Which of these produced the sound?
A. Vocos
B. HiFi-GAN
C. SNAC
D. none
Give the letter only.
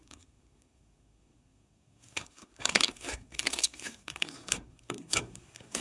C